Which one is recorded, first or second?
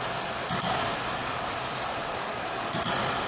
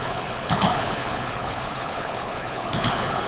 first